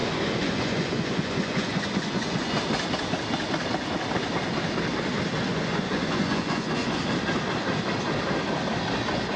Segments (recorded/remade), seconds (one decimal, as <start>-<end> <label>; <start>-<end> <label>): 0.0-2.6 remade; 2.6-5.5 recorded; 5.5-7.0 remade; 7.0-9.4 recorded